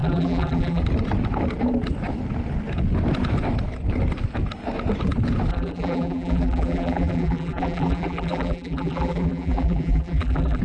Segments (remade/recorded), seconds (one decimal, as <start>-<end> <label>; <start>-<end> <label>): 0.0-0.8 remade; 0.8-5.5 recorded; 5.5-10.6 remade